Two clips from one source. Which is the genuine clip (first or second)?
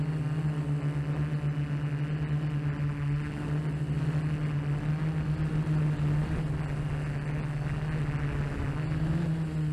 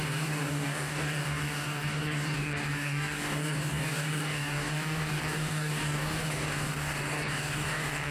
first